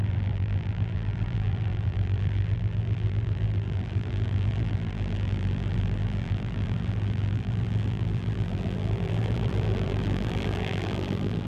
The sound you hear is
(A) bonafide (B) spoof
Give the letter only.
B